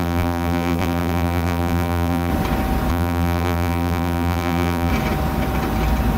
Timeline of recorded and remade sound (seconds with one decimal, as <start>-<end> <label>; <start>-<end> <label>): 0.0-2.3 remade; 2.3-2.9 recorded; 2.9-4.9 remade; 4.9-6.2 recorded